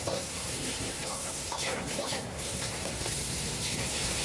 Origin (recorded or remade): remade